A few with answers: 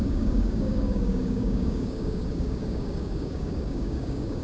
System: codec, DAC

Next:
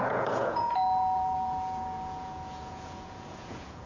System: vocoder, Vocos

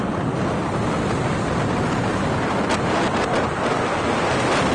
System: none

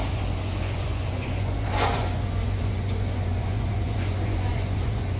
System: vocoder, Vocos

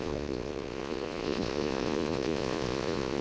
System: vocoder, Vocos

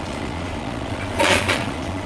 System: vocoder, Vocos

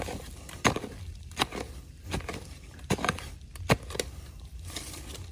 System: none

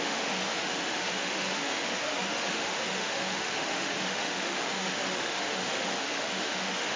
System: autoencoder, DAC-VAE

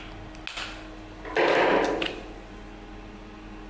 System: none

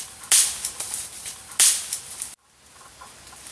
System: none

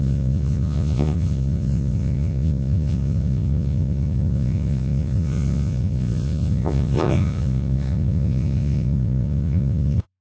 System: vocoder, Vocos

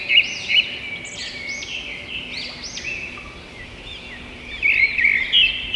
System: none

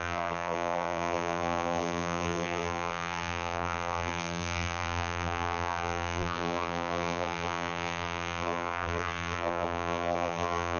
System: vocoder, BigVGAN v2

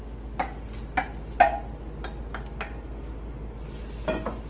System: none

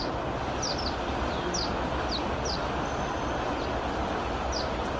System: none